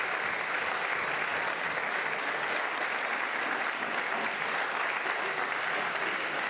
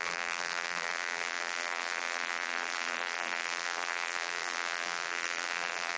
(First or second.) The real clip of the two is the first